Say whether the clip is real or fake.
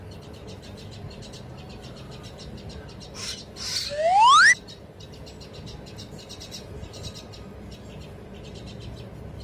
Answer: real